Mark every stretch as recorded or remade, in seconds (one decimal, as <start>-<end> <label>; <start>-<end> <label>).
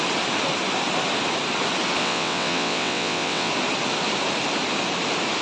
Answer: 0.0-2.0 recorded; 2.0-3.5 remade; 3.5-5.4 recorded